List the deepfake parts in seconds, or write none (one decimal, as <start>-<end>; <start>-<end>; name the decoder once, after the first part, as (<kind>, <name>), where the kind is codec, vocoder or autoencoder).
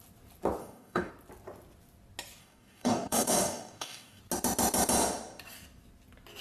0.6-1.1 (codec, DAC); 2.4-4.2